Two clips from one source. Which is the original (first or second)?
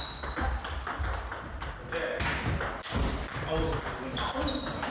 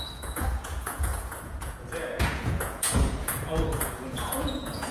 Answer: first